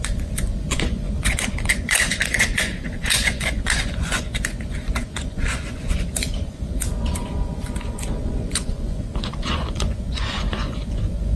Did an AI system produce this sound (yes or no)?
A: yes